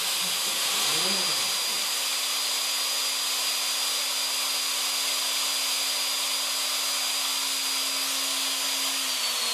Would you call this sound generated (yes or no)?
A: no